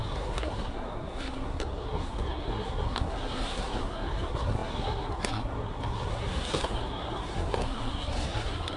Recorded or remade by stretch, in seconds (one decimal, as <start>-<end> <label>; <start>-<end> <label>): 0.0-8.8 remade